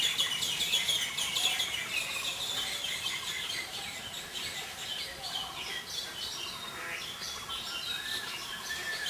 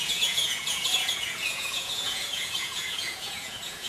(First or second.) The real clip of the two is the first